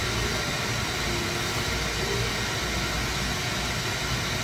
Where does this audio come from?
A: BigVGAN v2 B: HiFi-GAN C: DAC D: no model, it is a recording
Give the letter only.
D